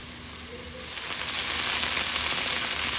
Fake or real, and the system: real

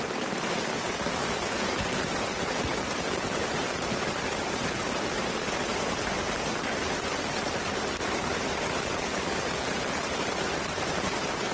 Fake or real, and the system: fake, vocoder, BigVGAN v2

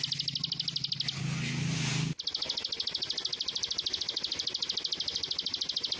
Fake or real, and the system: real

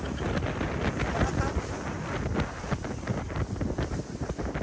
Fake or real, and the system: real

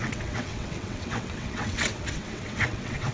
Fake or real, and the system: fake, vocoder, WaveNeXt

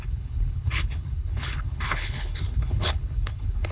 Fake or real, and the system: fake, codec, HILCodec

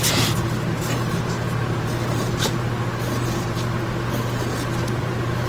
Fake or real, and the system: real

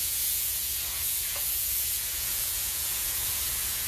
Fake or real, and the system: fake, vocoder, Vocos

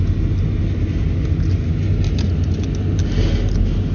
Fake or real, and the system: real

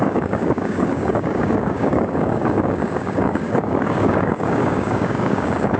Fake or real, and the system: fake, codec, DAC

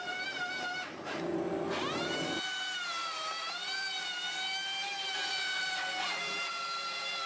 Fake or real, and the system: fake, vocoder, BigVGAN v2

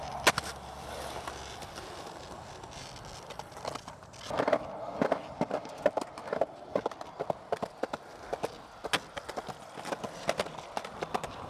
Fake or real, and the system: real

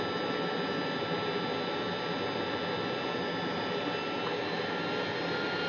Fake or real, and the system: real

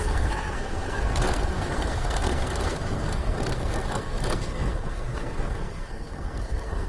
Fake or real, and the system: fake, codec, SNAC